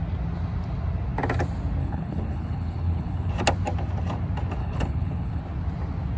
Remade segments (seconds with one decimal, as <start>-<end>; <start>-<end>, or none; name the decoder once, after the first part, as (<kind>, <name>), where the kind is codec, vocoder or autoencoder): 1.8-3.3 (codec, HILCodec); 4.6-5.4